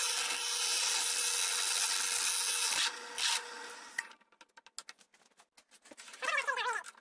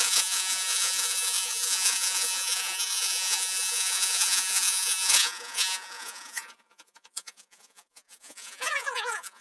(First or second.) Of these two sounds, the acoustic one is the first